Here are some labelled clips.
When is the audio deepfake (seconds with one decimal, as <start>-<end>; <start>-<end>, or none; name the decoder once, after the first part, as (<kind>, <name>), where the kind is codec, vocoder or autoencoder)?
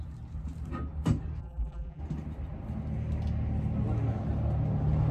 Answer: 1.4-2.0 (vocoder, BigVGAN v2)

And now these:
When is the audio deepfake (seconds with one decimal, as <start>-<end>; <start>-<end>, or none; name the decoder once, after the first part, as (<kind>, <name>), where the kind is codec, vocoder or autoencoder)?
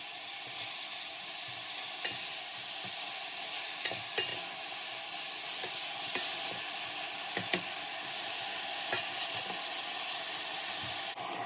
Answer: none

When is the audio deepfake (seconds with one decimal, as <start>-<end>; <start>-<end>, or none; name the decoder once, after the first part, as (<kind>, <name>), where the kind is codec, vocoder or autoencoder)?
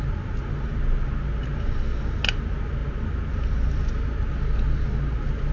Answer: none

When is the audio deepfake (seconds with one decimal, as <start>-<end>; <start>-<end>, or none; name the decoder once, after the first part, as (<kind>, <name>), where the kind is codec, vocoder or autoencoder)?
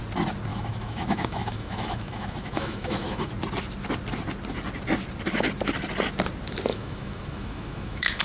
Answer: 0.5-3.3 (autoencoder, DAC-VAE); 6.7-8.2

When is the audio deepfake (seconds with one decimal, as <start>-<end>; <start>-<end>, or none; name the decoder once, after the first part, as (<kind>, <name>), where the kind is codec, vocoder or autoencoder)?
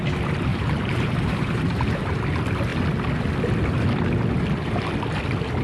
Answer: 0.5-2.0 (vocoder, BigVGAN v2)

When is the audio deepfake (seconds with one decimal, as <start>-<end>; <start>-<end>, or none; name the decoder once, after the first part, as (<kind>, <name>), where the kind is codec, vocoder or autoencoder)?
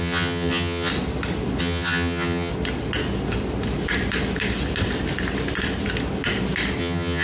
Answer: 0.0-0.9 (vocoder, HiFi-GAN); 1.6-2.5; 6.8-7.2